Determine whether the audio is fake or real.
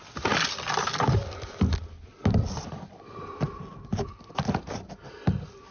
real